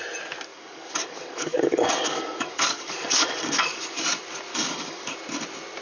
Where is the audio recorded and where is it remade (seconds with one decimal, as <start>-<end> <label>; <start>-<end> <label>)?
0.0-0.5 recorded; 0.5-4.0 remade; 4.0-4.5 recorded; 4.5-5.1 remade; 5.1-5.8 recorded